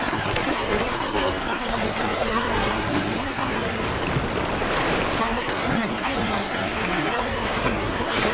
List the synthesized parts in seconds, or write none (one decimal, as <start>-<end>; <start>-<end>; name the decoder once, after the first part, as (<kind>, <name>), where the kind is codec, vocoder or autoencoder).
0.0-3.8 (codec, SNAC); 5.2-8.3